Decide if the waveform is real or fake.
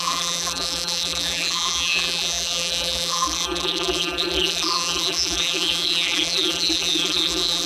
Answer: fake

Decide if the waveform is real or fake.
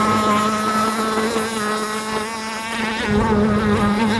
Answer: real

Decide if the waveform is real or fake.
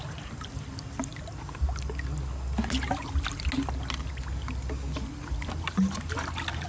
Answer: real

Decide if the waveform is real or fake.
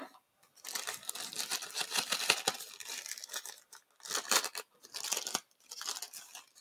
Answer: real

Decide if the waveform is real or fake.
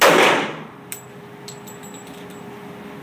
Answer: real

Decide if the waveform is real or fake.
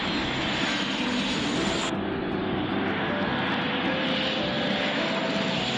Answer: real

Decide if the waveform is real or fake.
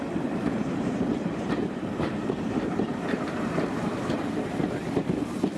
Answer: fake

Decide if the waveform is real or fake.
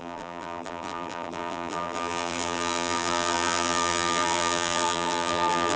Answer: fake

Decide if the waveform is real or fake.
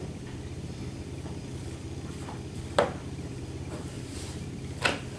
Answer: real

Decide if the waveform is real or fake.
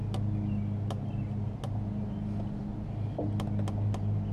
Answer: real